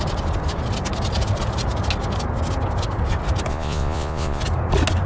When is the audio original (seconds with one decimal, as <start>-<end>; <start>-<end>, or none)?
0.0-3.5; 4.4-5.1